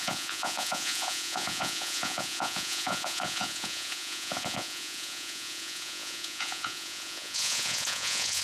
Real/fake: fake